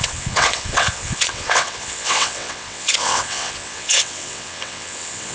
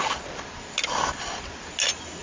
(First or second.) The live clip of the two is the second